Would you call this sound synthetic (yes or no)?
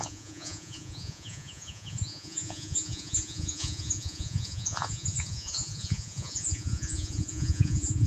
yes